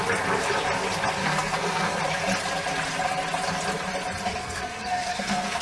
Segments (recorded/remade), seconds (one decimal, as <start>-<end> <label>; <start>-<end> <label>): 0.0-1.2 recorded; 1.2-2.0 remade; 2.0-4.4 recorded; 4.4-5.6 remade